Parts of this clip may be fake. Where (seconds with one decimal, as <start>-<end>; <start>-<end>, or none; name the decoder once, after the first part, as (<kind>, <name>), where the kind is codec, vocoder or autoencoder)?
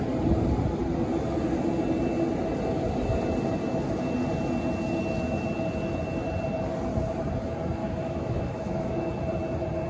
7.8-9.1 (autoencoder, DAC-VAE)